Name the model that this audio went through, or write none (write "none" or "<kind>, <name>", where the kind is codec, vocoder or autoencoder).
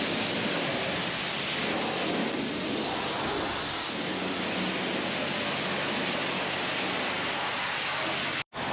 none